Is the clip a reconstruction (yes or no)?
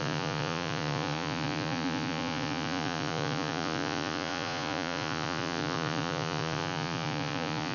yes